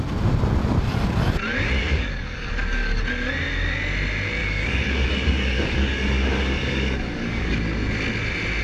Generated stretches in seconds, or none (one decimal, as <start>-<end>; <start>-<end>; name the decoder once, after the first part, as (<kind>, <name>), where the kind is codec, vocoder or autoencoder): 1.8-3.0 (codec, DAC); 4.4-7.6